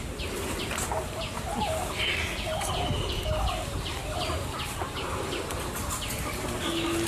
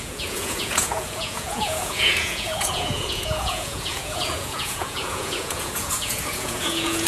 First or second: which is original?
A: first